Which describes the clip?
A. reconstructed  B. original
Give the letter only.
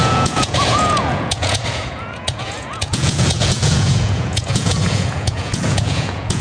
A